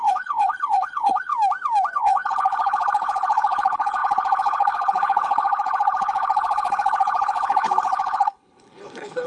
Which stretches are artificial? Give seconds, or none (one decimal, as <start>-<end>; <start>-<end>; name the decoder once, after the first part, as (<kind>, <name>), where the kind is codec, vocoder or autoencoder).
0.0-1.3 (codec, HILCodec); 1.9-9.3